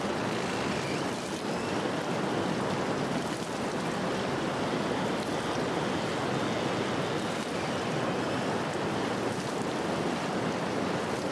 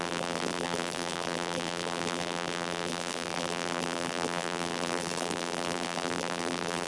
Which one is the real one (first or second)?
first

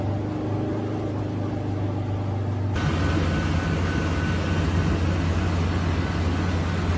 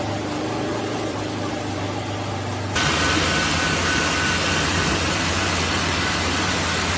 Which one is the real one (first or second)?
first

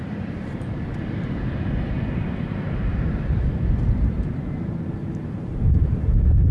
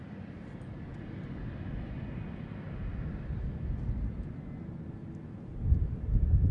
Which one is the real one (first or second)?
second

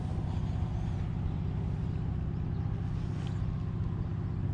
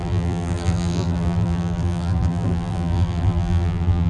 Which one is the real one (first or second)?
first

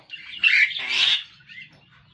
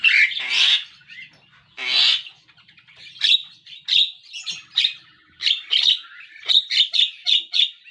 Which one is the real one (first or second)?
second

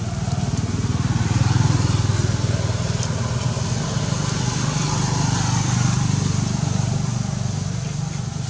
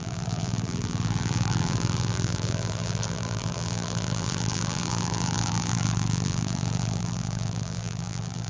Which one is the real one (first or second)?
first